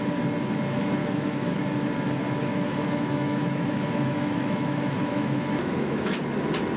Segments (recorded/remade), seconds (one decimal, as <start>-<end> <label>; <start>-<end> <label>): 0.0-1.0 recorded; 1.0-1.6 remade; 1.6-2.5 recorded; 2.5-6.2 remade; 6.2-6.8 recorded

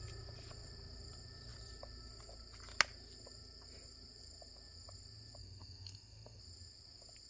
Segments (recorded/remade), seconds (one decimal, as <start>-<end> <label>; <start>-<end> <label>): 0.0-5.4 recorded; 5.4-6.4 remade; 6.4-7.3 recorded

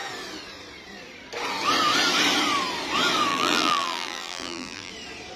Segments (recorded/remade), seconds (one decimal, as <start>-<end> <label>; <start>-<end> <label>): 0.0-3.3 recorded; 3.3-4.9 remade; 4.9-5.4 recorded

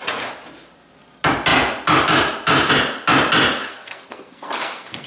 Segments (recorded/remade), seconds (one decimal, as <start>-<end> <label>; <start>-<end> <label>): 0.0-3.7 recorded; 3.7-5.1 remade

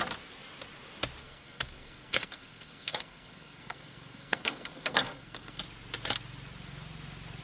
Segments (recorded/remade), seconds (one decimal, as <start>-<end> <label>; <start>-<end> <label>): 0.0-1.2 recorded; 1.2-5.6 remade; 5.6-7.4 recorded

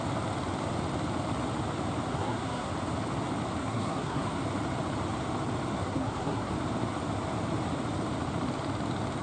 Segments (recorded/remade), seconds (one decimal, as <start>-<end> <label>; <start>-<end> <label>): 0.0-2.1 recorded; 2.1-2.7 remade; 2.7-3.6 recorded; 3.6-4.4 remade; 4.4-5.8 recorded; 5.8-6.5 remade; 6.5-9.2 recorded

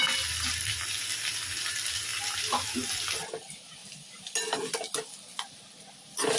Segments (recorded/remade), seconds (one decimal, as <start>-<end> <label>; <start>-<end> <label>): 0.0-2.1 recorded; 2.1-3.0 remade; 3.0-3.8 recorded; 3.8-6.4 remade

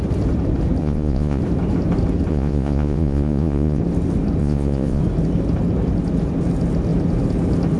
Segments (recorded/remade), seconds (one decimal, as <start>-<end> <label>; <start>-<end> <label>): 0.0-0.8 recorded; 0.8-1.4 remade; 1.4-2.3 recorded; 2.3-3.8 remade; 3.8-4.4 recorded; 4.4-5.0 remade; 5.0-7.8 recorded